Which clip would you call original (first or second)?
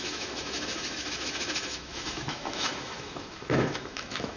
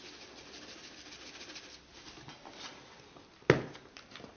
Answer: second